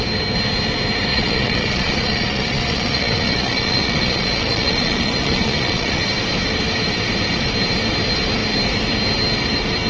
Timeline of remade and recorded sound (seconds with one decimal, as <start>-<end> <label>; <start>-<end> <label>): 0.0-1.1 recorded; 1.1-6.0 remade; 6.0-9.9 recorded